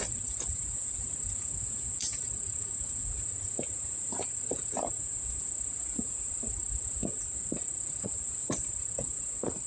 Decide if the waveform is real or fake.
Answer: fake